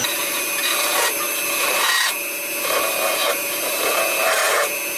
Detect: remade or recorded recorded